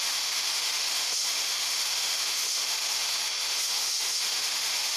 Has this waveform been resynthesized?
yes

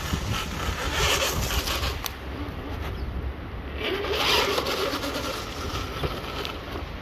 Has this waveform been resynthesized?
no